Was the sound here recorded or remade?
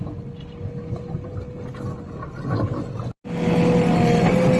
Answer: recorded